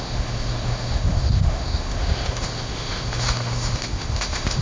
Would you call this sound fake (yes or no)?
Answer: yes